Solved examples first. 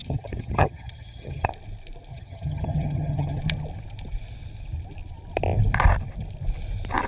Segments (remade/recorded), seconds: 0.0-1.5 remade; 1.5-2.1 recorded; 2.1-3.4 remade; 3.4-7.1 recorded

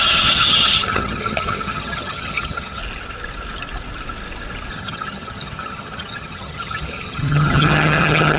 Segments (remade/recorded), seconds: 0.0-2.8 remade; 2.8-4.7 recorded; 4.7-8.4 remade

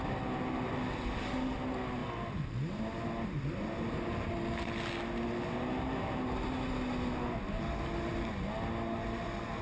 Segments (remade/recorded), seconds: 0.0-9.6 recorded

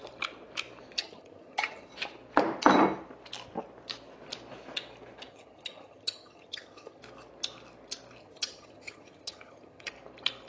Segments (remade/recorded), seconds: 0.0-1.0 recorded; 1.0-1.9 remade; 1.9-5.3 recorded; 5.3-7.0 remade; 7.0-8.2 recorded; 8.2-9.9 remade; 9.9-10.5 recorded

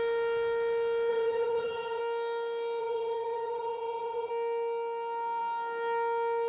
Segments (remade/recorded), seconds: 0.0-1.1 recorded; 1.1-2.0 remade; 2.0-2.8 recorded; 2.8-4.3 remade; 4.3-6.5 recorded